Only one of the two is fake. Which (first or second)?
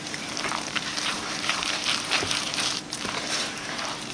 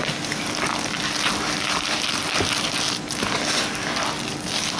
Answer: first